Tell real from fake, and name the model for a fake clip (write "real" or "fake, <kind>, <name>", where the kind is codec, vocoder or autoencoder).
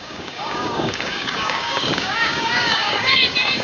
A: fake, codec, DAC